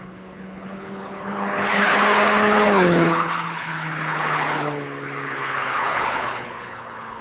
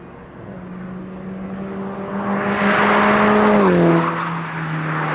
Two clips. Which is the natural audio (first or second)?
second